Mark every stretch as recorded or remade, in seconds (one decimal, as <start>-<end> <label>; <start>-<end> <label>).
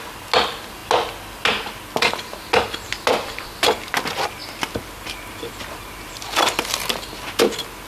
0.0-7.9 recorded